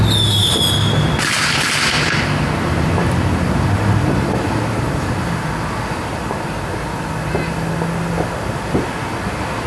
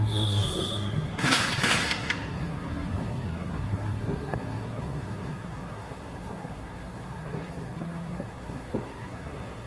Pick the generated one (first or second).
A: second